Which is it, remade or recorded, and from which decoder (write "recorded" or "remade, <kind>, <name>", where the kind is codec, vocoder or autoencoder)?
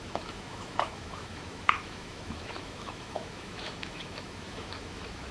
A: remade, autoencoder, DAC-VAE